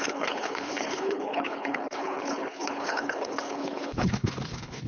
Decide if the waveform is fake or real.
fake